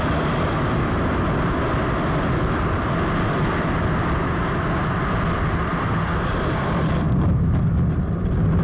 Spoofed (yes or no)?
no